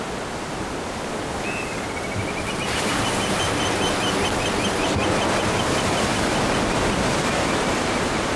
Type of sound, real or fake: real